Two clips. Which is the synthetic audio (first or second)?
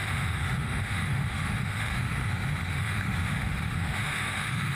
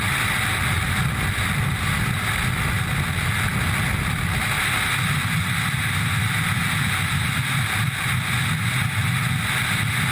first